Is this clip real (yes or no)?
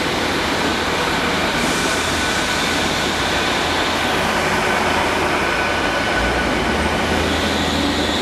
yes